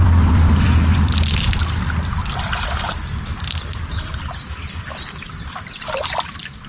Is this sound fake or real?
fake